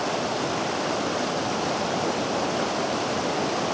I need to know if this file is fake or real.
real